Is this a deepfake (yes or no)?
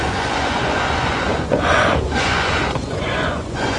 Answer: yes